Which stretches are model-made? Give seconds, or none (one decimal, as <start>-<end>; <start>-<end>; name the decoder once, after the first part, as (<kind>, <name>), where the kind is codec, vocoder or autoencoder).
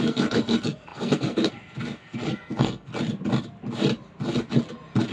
0.0-2.9 (codec, SNAC)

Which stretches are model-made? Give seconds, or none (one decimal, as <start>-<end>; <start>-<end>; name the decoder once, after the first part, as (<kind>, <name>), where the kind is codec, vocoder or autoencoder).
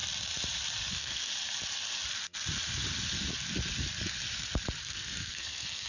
0.9-1.3 (codec, SNAC); 4.8-5.9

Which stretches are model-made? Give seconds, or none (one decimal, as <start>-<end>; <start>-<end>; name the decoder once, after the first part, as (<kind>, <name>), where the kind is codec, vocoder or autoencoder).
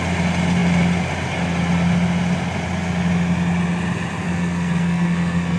4.2-5.6 (codec, SNAC)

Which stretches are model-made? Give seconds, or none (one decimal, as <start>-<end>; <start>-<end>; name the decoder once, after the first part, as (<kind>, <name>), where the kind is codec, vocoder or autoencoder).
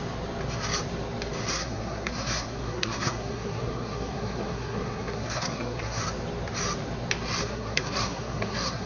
1.5-6.0 (codec, SNAC); 7.4-8.9